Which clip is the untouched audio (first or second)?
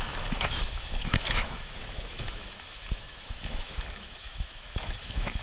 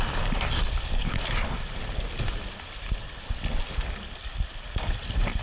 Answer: second